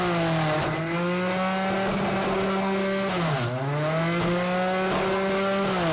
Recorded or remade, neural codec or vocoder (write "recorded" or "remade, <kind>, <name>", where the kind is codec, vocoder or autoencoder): recorded